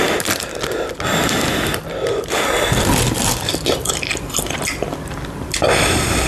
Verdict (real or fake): real